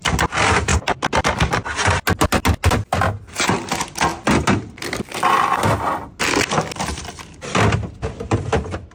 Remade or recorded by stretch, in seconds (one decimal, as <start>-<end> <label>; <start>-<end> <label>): 0.0-8.9 recorded